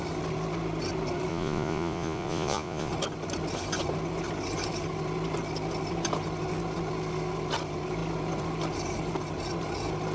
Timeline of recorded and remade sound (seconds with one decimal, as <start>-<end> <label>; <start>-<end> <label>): 0.0-1.3 recorded; 1.3-2.9 remade; 2.9-10.1 recorded